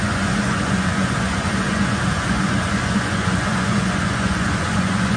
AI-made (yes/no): yes